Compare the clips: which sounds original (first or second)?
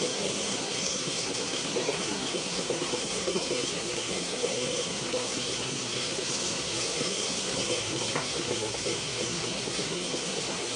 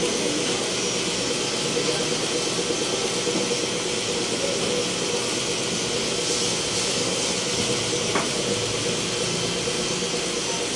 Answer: second